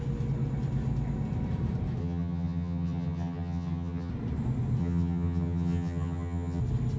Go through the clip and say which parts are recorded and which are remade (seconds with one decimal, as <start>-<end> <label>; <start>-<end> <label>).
0.0-2.0 recorded; 2.0-4.1 remade; 4.1-4.8 recorded; 4.8-6.6 remade; 6.6-7.0 recorded